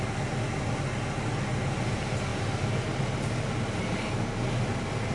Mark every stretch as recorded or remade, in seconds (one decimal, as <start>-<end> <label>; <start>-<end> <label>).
0.0-5.1 recorded